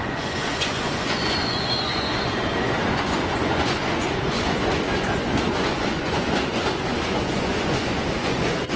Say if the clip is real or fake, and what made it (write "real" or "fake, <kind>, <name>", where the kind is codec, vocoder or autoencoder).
fake, vocoder, Vocos